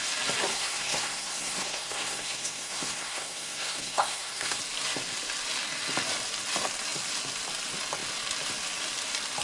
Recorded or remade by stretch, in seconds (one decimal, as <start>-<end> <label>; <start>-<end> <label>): 0.0-0.5 recorded; 0.5-4.6 remade; 4.6-9.4 recorded